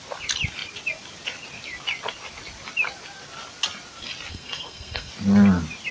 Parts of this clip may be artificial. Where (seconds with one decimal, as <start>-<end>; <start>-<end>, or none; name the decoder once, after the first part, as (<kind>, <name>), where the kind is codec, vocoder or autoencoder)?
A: 4.3-5.1 (codec, SNAC)